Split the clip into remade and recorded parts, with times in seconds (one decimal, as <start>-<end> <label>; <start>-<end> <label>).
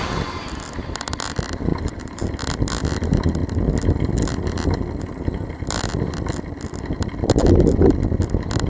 0.0-1.7 recorded; 1.7-2.3 remade; 2.3-8.7 recorded